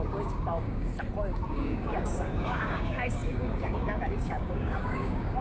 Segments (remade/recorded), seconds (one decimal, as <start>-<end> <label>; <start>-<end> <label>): 0.0-0.9 remade; 0.9-1.5 recorded; 1.5-5.4 remade